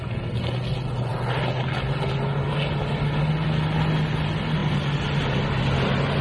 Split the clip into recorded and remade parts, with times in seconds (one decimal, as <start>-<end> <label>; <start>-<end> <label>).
0.0-6.2 recorded